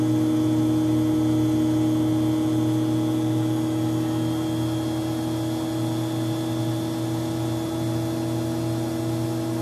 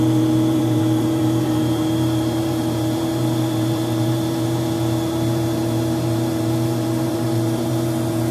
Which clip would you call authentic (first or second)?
first